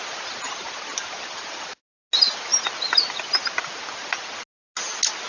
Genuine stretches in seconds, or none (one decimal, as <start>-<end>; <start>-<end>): 0.0-5.3